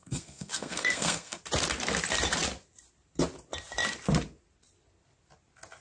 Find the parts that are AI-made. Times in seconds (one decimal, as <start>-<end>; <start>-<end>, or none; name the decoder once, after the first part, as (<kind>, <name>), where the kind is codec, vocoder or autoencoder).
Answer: 0.0-1.4 (codec, SNAC)